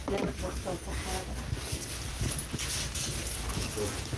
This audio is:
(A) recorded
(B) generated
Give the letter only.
A